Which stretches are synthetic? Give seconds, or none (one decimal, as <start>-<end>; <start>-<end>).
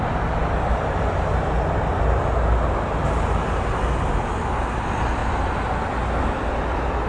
none